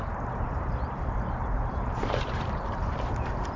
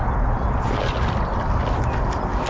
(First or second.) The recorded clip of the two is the second